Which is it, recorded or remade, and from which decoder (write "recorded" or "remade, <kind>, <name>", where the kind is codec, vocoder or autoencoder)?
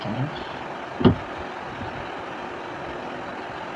remade, vocoder, BigVGAN v2